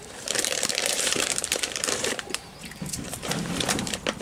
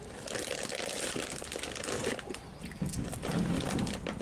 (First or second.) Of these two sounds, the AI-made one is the first